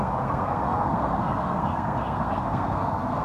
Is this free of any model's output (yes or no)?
no